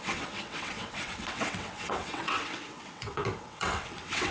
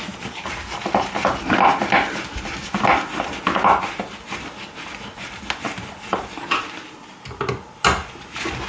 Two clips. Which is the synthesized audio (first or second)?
first